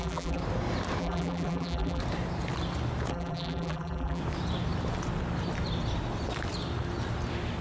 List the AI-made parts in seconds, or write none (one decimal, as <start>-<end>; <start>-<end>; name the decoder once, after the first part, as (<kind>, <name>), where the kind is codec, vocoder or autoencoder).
0.0-0.4 (vocoder, BigVGAN v2); 1.0-2.0; 3.1-4.2